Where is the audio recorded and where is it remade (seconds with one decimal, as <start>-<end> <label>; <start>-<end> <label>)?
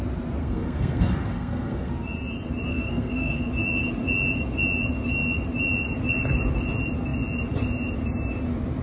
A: 0.0-0.4 recorded; 0.4-1.9 remade; 1.9-2.7 recorded; 2.7-3.5 remade; 3.5-8.8 recorded